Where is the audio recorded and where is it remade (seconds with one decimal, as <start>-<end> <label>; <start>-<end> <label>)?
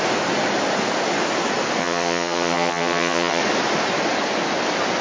0.0-1.8 recorded; 1.8-3.4 remade; 3.4-5.0 recorded